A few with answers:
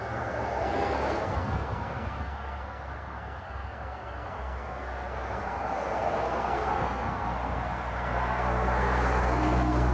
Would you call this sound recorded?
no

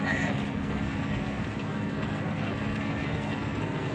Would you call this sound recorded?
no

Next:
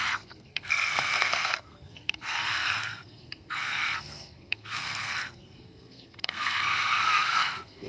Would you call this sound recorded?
no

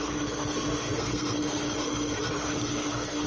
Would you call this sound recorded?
no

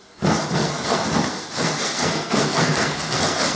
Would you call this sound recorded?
no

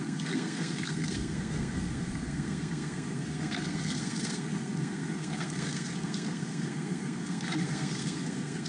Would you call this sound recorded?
no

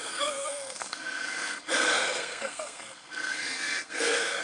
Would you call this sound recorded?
no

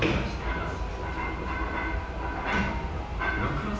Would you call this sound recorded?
yes